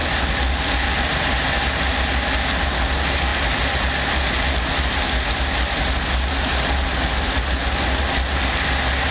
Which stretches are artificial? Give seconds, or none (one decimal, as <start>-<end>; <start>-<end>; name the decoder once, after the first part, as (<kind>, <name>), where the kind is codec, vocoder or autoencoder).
none